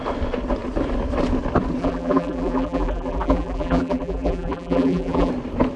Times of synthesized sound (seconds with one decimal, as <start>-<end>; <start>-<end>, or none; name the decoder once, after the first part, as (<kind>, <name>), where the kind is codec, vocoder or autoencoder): 1.8-5.3 (vocoder, BigVGAN v2)